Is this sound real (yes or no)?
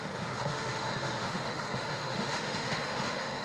no